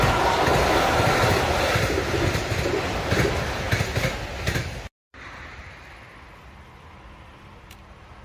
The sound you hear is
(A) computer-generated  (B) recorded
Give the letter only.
B